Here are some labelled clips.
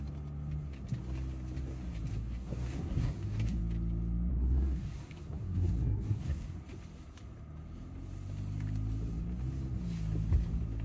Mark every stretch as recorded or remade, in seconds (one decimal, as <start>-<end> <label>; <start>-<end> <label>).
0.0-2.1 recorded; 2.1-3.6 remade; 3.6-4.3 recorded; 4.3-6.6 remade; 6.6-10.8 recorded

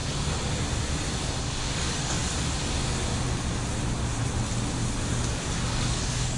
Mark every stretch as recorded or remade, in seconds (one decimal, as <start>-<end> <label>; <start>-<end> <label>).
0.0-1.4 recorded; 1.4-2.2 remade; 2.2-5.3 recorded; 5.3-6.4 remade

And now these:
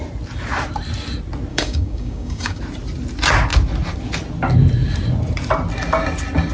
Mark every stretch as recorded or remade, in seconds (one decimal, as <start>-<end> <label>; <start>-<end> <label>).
0.0-1.5 recorded; 1.5-2.6 remade; 2.6-6.5 recorded

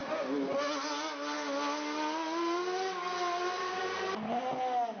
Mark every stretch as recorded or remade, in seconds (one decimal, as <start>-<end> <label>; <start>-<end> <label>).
0.0-5.0 recorded